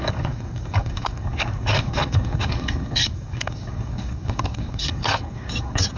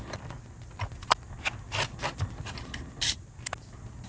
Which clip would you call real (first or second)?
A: second